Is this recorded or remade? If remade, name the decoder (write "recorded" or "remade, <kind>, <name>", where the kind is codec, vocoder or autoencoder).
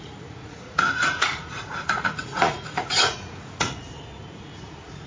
remade, vocoder, Vocos